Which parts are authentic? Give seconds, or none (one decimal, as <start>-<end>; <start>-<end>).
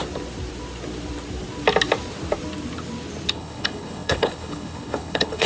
0.0-3.3